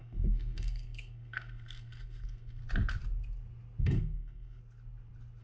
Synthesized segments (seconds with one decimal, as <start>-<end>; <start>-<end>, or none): 0.0-2.6; 3.8-4.6